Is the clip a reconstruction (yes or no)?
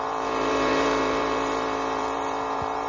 yes